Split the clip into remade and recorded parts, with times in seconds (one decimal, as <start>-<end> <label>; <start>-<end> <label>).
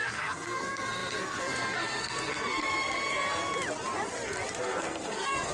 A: 0.0-3.5 remade; 3.5-4.6 recorded; 4.6-5.5 remade